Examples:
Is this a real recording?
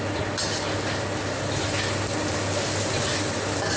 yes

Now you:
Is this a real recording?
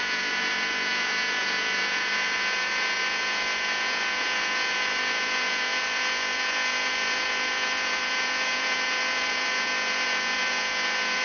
no